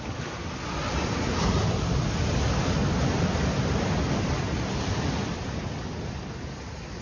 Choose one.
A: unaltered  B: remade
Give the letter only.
A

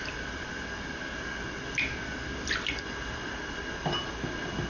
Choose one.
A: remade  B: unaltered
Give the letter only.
B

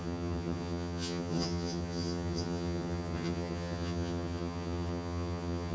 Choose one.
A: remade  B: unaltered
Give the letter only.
A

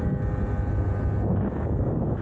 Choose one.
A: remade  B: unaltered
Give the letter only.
B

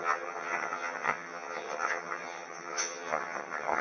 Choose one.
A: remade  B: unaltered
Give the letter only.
A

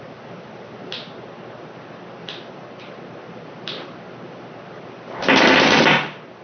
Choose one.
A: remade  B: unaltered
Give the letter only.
B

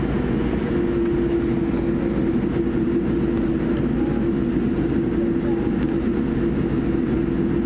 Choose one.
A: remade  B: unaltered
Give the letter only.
B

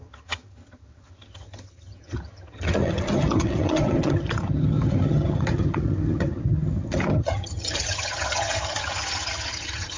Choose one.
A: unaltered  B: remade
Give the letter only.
B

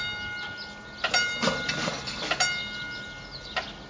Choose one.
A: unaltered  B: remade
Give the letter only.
A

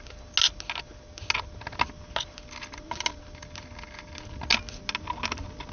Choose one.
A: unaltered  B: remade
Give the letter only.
A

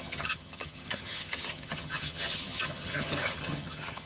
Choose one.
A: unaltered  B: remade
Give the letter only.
B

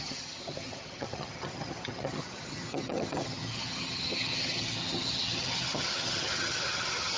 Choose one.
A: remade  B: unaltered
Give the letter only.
A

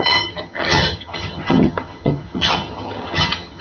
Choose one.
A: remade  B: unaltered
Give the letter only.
A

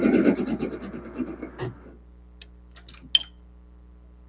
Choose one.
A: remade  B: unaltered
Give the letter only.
B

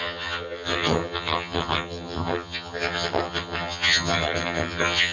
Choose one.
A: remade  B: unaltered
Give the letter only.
A